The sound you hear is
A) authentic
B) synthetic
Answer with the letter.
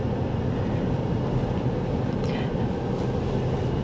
A